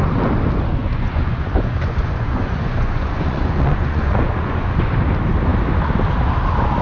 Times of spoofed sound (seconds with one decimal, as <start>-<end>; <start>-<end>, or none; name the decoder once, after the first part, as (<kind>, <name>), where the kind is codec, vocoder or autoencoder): 0.8-4.9 (vocoder, Vocos)